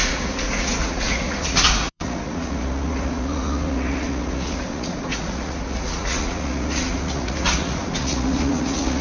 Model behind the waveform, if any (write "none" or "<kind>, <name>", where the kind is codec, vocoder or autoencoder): vocoder, Vocos